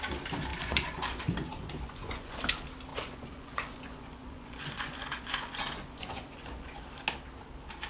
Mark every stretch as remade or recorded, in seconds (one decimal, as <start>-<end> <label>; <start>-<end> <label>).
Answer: 0.0-0.5 recorded; 0.5-2.4 remade; 2.4-2.9 recorded; 2.9-6.8 remade; 6.8-7.9 recorded